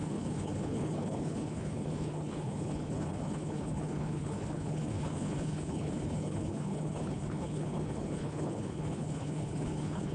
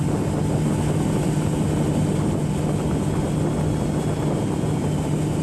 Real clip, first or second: second